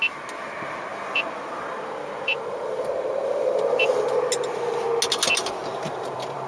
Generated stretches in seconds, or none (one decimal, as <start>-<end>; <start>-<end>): 0.9-4.1; 5.6-6.5